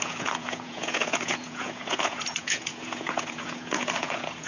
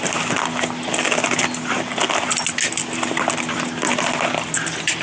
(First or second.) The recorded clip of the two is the second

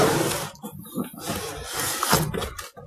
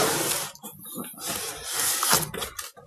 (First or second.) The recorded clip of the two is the first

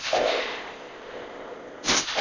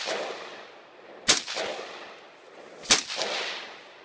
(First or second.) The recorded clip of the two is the second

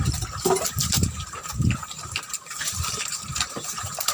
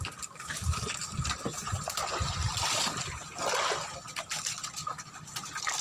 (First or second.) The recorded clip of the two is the second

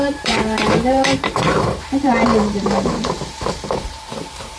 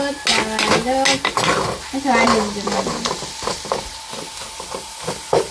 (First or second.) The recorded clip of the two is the second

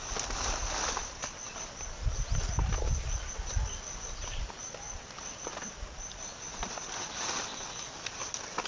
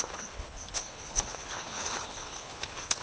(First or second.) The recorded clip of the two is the first